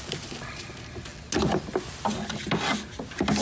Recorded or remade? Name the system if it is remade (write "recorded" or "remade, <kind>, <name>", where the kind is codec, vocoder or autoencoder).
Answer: recorded